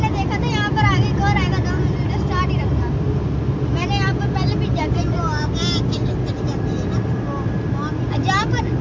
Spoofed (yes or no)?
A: no